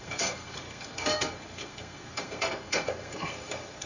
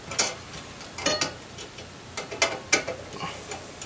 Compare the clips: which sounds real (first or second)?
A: second